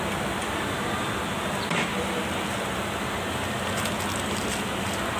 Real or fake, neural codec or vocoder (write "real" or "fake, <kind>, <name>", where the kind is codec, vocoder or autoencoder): real